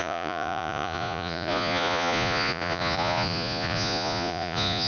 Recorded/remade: remade